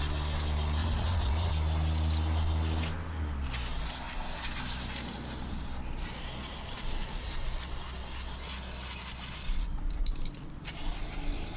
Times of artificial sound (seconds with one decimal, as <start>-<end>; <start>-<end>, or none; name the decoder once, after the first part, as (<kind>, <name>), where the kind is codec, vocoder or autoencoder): 0.8-1.5 (vocoder, Vocos)